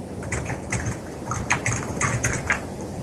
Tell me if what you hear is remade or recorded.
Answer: remade